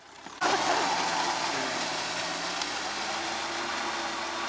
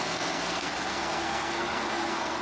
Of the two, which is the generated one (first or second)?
second